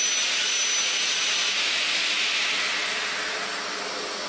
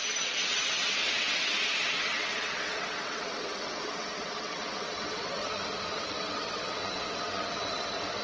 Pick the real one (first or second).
first